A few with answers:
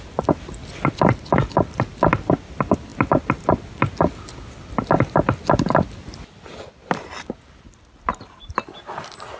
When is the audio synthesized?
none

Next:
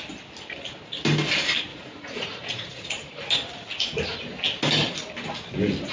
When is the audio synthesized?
1.7-2.9 (vocoder, Vocos)

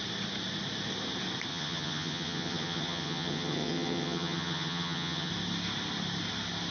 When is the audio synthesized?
1.5-5.3 (vocoder, HiFi-GAN)

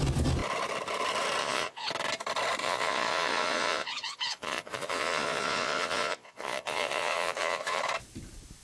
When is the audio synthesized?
1.4-1.9 (vocoder, Vocos); 2.6-7.8

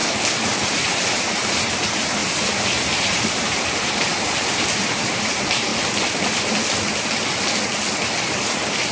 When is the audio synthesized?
0.7-5.7 (vocoder, BigVGAN v2); 8.3-8.9